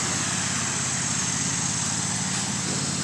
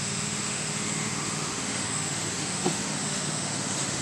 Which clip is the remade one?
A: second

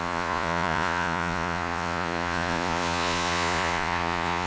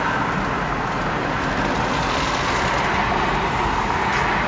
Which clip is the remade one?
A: first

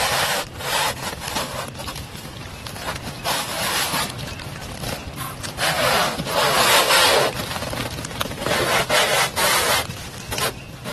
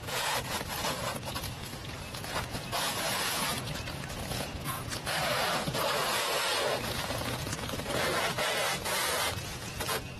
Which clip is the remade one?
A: second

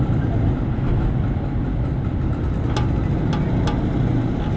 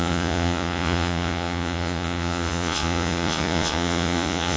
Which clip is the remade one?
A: second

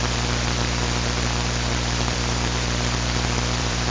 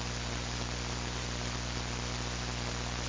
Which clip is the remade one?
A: first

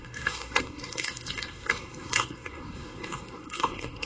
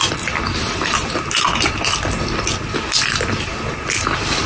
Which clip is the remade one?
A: first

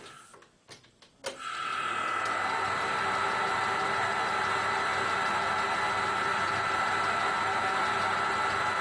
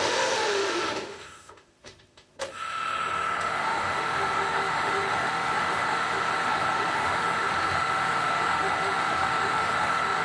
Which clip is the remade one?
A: second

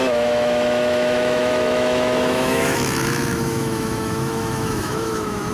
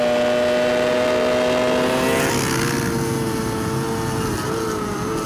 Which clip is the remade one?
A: first